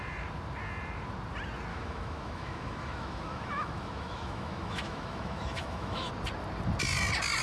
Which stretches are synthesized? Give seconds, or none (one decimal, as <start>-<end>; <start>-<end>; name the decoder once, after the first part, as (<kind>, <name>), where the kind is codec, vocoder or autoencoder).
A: 1.7-6.1 (autoencoder, DAC-VAE)